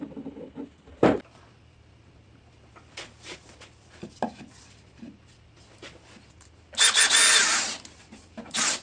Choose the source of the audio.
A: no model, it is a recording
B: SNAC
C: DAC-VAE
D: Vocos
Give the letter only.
A